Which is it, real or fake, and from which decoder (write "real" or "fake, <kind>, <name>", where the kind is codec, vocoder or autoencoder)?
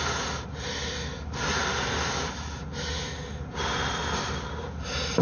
real